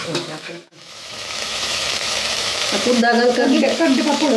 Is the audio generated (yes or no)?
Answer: yes